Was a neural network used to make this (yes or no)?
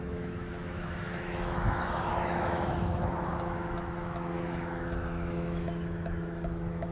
yes